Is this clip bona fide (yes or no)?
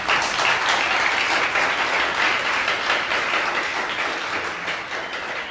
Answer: yes